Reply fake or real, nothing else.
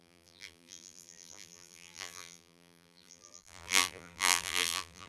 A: fake